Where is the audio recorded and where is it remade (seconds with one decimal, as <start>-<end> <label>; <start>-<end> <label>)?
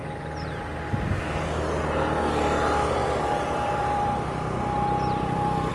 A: 0.0-0.6 remade; 0.6-3.0 recorded; 3.0-5.7 remade